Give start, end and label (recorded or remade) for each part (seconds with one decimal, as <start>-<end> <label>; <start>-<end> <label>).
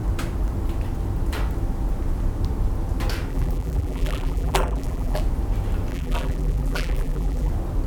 0.0-3.3 recorded; 3.3-5.2 remade; 5.2-5.9 recorded; 5.9-7.5 remade; 7.5-7.9 recorded